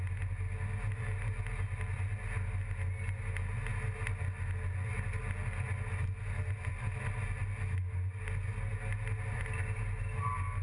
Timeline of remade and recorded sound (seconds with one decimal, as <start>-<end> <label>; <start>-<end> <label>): 0.0-10.6 recorded